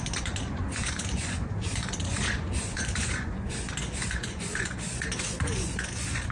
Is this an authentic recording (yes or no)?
no